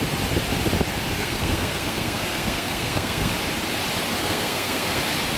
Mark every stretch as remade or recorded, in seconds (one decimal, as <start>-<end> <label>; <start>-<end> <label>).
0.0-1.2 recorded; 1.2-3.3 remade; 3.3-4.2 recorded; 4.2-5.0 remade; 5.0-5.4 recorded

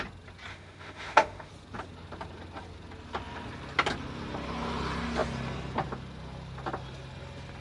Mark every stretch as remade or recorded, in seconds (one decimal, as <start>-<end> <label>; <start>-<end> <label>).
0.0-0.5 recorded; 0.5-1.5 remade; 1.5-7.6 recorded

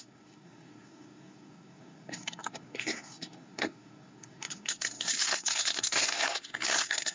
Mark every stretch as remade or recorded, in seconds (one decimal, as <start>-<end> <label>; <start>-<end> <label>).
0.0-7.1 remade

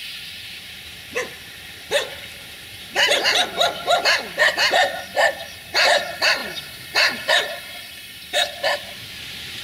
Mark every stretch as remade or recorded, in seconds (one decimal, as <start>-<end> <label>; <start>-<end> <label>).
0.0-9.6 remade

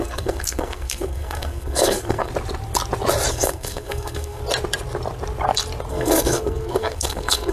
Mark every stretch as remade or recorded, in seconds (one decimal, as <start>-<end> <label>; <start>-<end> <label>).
0.0-2.3 remade; 2.3-3.3 recorded; 3.3-4.4 remade; 4.4-5.9 recorded; 5.9-7.5 remade